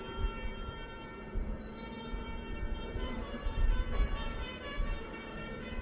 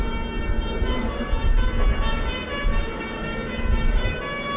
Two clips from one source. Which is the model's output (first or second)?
first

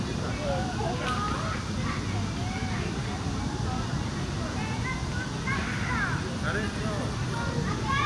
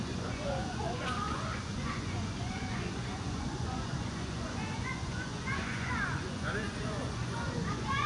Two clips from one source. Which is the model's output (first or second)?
second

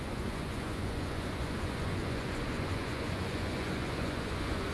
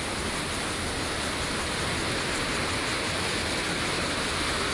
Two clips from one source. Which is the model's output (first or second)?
first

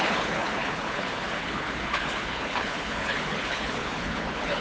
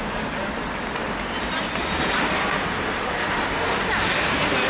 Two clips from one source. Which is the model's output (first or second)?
first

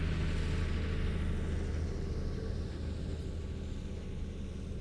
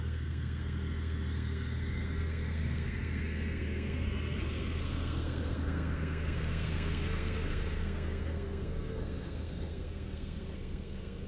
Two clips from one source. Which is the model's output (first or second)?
second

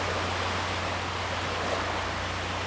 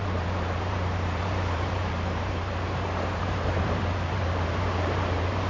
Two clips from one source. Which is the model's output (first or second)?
second